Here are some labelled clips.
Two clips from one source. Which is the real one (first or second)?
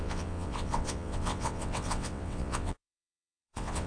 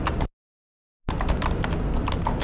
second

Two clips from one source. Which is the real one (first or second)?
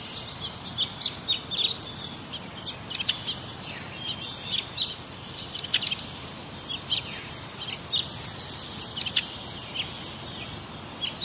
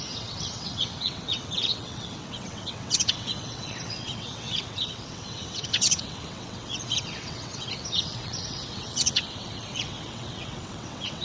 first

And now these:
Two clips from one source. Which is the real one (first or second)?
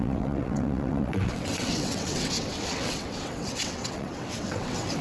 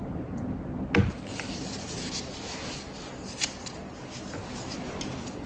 second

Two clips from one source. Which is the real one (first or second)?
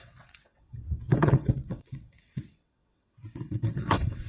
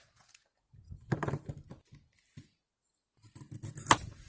second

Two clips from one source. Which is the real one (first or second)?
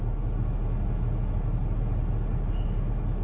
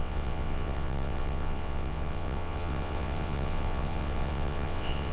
first